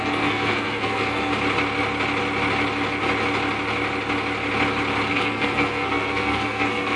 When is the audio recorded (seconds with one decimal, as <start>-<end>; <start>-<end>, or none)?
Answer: 1.3-5.1